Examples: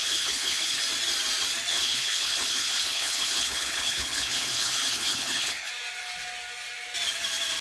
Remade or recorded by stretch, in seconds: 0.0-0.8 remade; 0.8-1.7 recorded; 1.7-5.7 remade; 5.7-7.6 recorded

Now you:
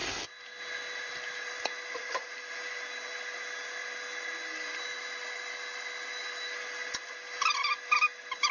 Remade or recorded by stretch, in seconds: 0.0-8.5 recorded

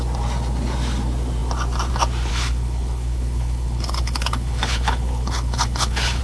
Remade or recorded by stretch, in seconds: 0.0-2.3 recorded; 2.3-6.2 remade

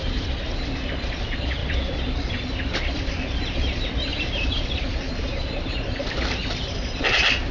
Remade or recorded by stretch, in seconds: 0.0-1.6 recorded; 1.6-2.3 remade; 2.3-4.1 recorded; 4.1-7.0 remade; 7.0-7.5 recorded

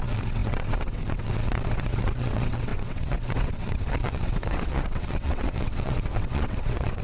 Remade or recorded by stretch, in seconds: 0.0-7.0 remade

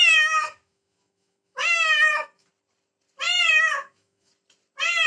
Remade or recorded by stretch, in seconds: 0.0-2.5 remade; 2.5-3.5 recorded; 3.5-4.3 remade; 4.3-5.1 recorded

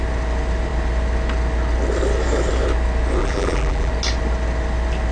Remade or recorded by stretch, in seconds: 0.0-3.2 recorded; 3.2-3.9 remade; 3.9-5.1 recorded

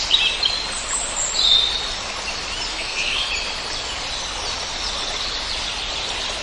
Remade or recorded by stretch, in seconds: 0.0-2.7 recorded; 2.7-3.3 remade; 3.3-6.4 recorded